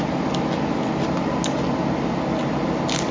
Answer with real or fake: real